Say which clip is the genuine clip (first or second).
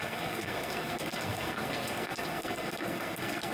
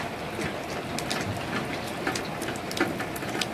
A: second